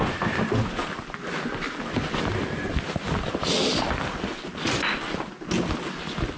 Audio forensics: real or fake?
real